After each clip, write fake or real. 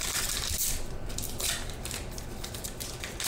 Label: real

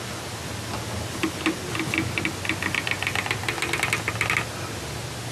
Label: real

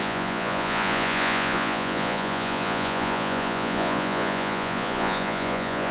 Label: fake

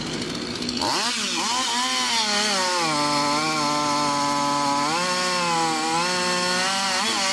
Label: real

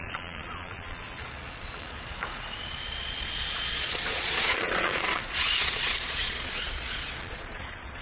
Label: fake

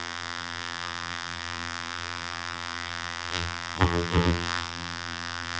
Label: fake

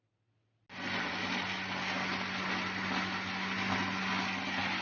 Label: real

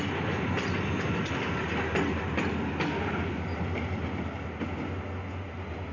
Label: real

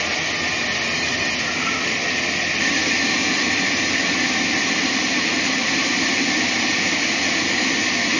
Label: real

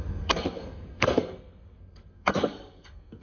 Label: fake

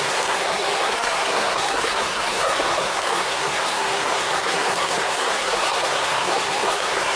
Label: fake